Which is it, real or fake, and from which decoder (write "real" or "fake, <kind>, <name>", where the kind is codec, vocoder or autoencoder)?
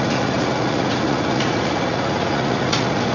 fake, vocoder, Vocos